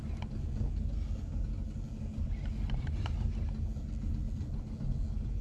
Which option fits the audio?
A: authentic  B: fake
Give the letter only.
A